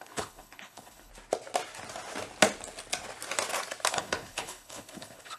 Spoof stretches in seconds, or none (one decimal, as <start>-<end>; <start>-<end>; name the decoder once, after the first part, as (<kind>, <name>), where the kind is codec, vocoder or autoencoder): 0.0-1.1 (codec, HILCodec); 3.9-5.4